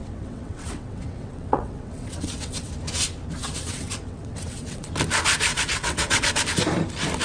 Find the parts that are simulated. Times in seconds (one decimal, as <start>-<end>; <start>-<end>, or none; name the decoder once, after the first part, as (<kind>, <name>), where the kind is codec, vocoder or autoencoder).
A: 0.0-2.7 (vocoder, WaveNeXt); 3.4-4.9; 5.5-6.3